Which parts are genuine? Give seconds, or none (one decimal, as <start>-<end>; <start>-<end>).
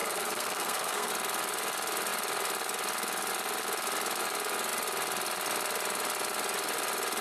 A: 1.1-7.2